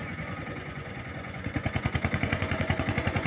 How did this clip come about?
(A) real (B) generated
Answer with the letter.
B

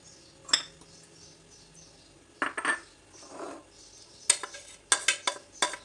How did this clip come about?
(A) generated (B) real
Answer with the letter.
B